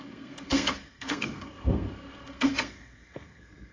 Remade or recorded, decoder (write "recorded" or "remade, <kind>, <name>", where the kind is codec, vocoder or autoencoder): remade, codec, SNAC